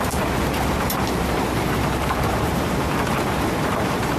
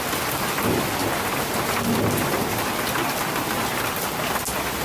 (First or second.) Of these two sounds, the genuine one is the second